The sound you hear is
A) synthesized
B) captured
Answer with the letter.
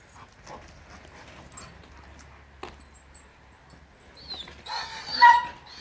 B